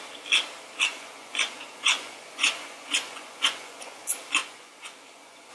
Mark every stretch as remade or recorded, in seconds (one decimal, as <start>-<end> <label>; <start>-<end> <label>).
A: 0.0-0.9 recorded; 0.9-4.0 remade; 4.0-4.4 recorded; 4.4-5.5 remade